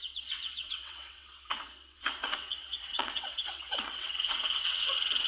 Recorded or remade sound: remade